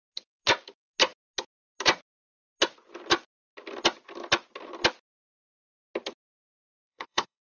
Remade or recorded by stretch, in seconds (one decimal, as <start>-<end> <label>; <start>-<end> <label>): 0.0-6.6 recorded; 6.6-7.4 remade